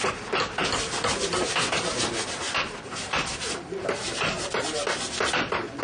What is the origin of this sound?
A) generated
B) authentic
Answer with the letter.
B